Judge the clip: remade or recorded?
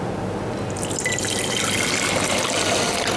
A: recorded